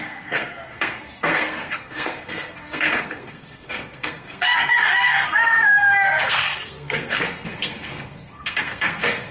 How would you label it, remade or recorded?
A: remade